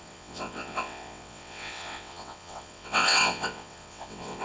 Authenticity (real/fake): fake